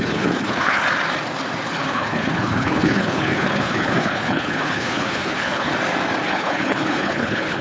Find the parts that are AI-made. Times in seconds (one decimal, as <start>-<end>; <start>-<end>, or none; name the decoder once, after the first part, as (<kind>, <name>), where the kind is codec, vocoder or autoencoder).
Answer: 0.0-0.8 (codec, HILCodec); 1.7-5.7; 6.3-7.6